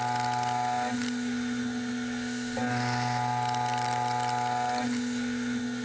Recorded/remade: recorded